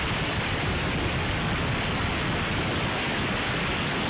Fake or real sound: real